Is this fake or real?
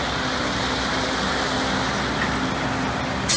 real